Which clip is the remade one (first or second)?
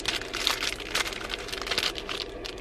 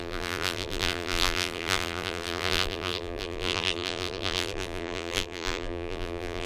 second